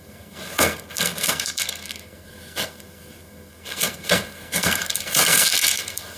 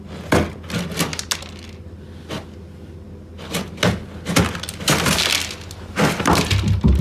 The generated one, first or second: first